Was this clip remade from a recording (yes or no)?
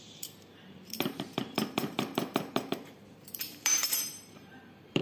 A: yes